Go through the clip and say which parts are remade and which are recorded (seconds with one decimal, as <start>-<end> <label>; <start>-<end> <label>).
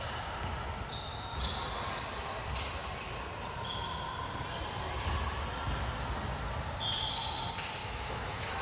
0.0-7.8 recorded; 7.8-8.6 remade